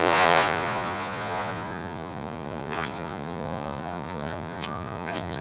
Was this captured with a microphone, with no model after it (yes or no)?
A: no